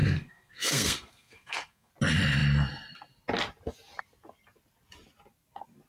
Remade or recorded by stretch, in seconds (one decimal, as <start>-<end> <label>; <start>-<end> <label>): 0.0-1.9 remade; 1.9-5.9 recorded